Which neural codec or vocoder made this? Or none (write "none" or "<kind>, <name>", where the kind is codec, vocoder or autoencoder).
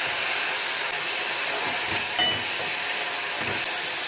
none